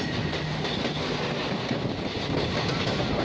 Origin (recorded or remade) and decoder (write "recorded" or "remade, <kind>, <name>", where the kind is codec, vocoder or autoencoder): recorded